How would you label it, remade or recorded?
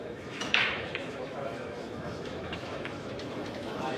remade